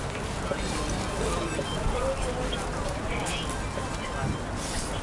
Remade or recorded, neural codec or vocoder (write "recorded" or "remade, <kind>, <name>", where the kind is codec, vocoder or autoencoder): recorded